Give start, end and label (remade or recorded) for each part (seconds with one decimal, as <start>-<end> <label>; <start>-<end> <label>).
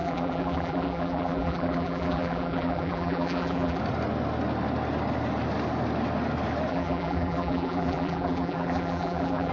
0.0-3.8 remade; 3.8-6.7 recorded; 6.7-9.5 remade